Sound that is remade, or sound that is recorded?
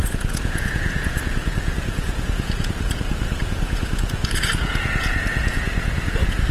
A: remade